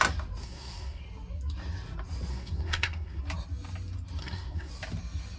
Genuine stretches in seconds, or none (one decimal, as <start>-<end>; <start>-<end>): 0.0-0.4; 1.0-2.3; 3.2-4.2; 4.7-5.4